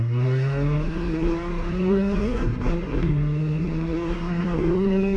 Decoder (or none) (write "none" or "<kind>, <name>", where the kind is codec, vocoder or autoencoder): codec, SNAC